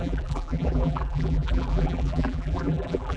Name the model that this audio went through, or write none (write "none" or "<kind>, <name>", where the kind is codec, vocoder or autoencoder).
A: vocoder, BigVGAN v2